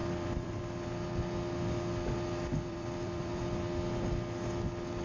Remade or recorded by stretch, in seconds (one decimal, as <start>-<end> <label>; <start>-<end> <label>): 0.0-0.6 remade; 0.6-2.5 recorded; 2.5-3.4 remade; 3.4-5.0 recorded